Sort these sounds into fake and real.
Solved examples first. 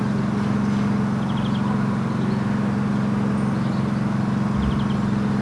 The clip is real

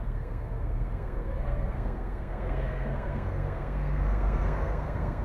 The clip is fake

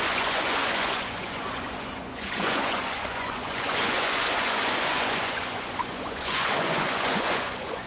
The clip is fake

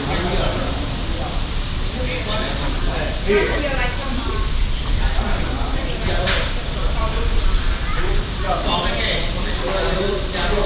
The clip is fake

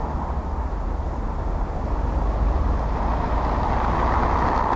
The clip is real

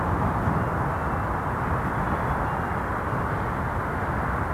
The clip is real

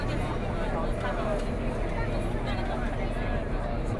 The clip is real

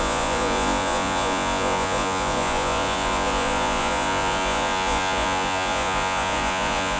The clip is fake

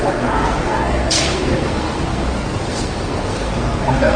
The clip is fake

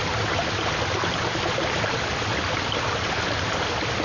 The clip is real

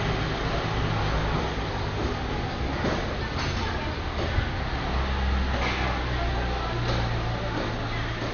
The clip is real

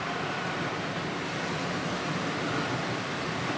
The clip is real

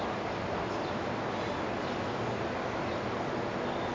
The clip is real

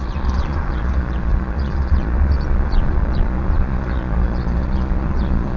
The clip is fake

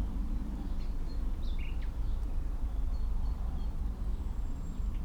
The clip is real